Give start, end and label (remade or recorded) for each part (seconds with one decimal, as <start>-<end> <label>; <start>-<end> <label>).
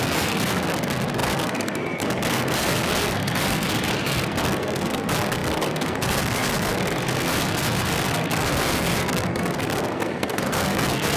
0.0-11.2 remade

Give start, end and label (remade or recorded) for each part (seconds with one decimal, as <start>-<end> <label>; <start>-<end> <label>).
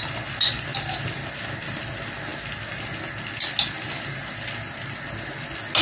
0.0-5.8 recorded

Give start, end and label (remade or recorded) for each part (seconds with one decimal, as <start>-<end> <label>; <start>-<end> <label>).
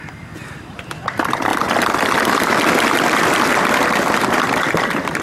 0.0-5.2 recorded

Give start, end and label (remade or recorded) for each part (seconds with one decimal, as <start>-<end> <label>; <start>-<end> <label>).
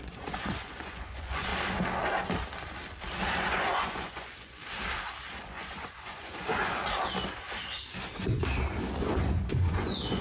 0.0-1.5 remade; 1.5-3.4 recorded; 3.4-4.6 remade; 4.6-5.4 recorded; 5.4-6.8 remade; 6.8-9.0 recorded; 9.0-10.2 remade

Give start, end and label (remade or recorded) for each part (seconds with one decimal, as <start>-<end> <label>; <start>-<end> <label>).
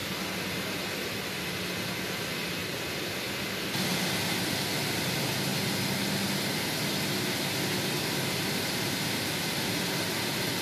0.0-10.6 recorded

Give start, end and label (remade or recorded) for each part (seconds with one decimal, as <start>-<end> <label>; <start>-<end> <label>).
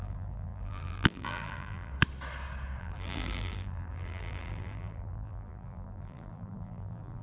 0.0-1.9 remade; 1.9-2.8 recorded; 2.8-7.2 remade